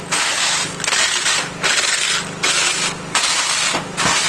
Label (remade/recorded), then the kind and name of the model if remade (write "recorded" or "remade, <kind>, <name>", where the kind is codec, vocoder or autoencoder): recorded